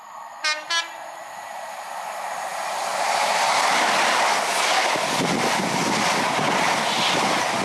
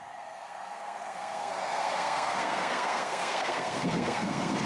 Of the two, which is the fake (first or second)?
second